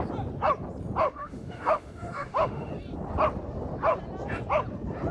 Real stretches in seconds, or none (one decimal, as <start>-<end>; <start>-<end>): 0.0-1.0; 2.7-5.1